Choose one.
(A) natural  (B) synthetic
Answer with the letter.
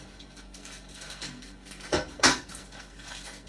B